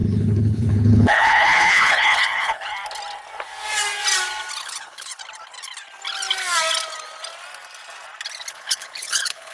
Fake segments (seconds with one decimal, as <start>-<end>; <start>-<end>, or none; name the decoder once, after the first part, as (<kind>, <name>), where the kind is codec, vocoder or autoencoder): 0.0-2.7 (codec, HILCodec); 4.6-5.1; 8.5-9.5